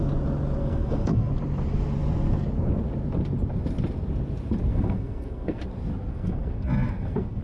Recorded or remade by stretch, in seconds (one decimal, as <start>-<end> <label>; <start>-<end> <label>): 0.0-0.6 recorded; 0.6-1.3 remade; 1.3-4.7 recorded; 4.7-5.6 remade; 5.6-6.1 recorded; 6.1-7.4 remade

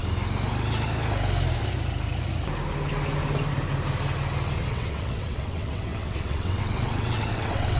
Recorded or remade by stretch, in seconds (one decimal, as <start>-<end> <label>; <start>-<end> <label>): 0.0-4.7 recorded; 4.7-7.8 remade

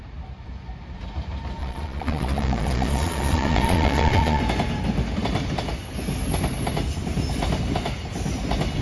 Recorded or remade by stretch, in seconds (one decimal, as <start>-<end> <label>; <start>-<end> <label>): 0.0-1.6 recorded; 1.6-4.4 remade; 4.4-8.8 recorded

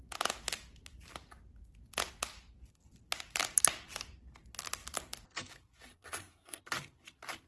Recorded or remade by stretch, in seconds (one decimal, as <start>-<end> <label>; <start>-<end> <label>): 0.0-5.9 recorded; 5.9-6.6 remade; 6.6-7.5 recorded

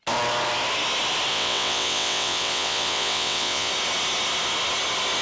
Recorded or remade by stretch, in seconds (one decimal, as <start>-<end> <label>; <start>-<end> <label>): 0.0-1.3 recorded; 1.3-3.7 remade; 3.7-5.2 recorded

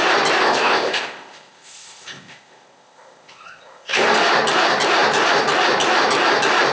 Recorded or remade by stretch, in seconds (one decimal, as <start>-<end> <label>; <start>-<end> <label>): 0.0-0.4 recorded; 0.4-4.0 remade; 4.0-6.7 recorded

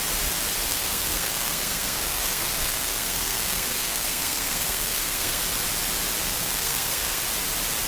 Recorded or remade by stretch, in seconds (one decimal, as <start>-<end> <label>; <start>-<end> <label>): 0.0-0.7 recorded; 0.7-5.4 remade; 5.4-6.2 recorded; 6.2-7.2 remade; 7.2-7.9 recorded

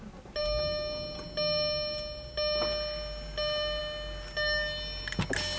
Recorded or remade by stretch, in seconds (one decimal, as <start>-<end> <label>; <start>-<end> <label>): 0.0-5.6 recorded